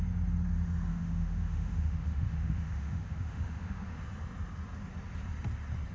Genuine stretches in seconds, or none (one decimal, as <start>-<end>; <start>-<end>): 0.0-0.9; 3.9-5.9